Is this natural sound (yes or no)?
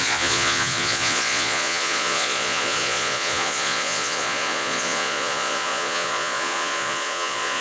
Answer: no